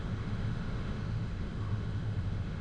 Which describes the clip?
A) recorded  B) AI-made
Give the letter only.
B